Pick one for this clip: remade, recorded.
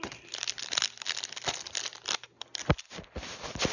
recorded